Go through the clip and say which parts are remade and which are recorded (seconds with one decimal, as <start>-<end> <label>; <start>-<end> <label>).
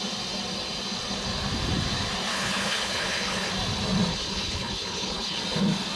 0.0-2.3 recorded; 2.3-3.5 remade; 3.5-4.1 recorded; 4.1-5.4 remade; 5.4-6.0 recorded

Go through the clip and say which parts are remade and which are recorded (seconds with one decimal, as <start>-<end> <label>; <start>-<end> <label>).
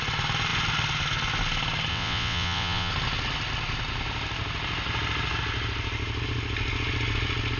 0.0-1.9 recorded; 1.9-2.9 remade; 2.9-7.6 recorded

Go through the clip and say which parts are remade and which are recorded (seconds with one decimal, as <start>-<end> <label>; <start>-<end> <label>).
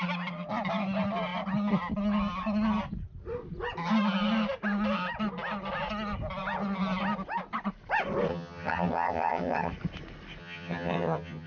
0.0-8.3 recorded; 8.3-9.7 remade; 9.7-10.4 recorded; 10.4-11.5 remade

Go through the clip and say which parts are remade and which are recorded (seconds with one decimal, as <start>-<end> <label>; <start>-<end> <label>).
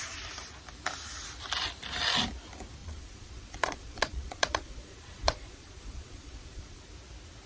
0.0-2.8 recorded; 2.8-6.8 remade; 6.8-7.5 recorded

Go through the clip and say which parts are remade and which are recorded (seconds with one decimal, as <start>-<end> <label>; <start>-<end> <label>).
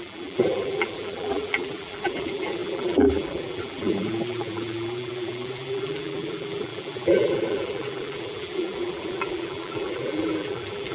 0.0-10.9 remade